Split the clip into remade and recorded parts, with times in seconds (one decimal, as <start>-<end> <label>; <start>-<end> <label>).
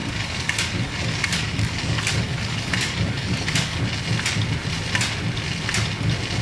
0.0-3.8 remade; 3.8-6.4 recorded